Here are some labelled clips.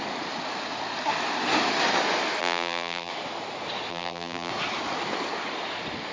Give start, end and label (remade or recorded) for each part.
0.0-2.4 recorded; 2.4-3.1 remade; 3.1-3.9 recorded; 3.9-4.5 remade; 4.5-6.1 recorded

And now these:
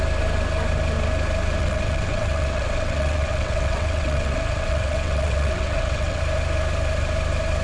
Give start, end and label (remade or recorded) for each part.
0.0-1.6 recorded; 1.6-6.2 remade; 6.2-7.6 recorded

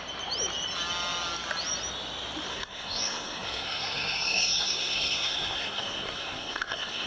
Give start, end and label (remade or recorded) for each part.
0.0-2.5 recorded; 2.5-7.1 remade